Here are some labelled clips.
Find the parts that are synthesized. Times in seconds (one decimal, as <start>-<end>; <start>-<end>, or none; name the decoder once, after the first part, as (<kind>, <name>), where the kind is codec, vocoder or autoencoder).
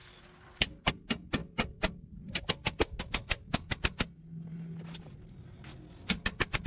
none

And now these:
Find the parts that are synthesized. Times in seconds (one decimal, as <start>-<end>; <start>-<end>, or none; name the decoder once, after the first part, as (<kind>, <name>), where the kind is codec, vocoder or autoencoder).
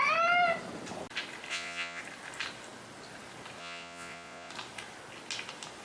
1.5-2.0 (vocoder, Vocos); 3.6-4.5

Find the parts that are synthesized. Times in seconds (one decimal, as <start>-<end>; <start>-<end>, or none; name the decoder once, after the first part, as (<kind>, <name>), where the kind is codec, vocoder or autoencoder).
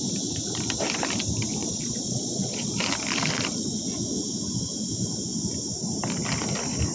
1.6-2.7 (vocoder, Vocos)